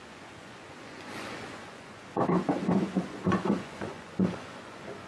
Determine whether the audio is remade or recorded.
remade